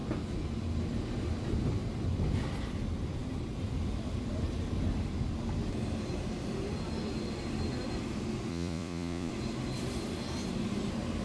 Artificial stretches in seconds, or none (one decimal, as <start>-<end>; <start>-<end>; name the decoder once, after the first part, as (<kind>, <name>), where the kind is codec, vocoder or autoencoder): 8.5-9.3 (vocoder, Vocos)